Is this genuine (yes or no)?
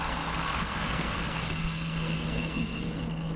no